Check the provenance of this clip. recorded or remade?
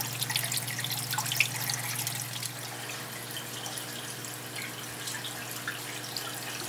recorded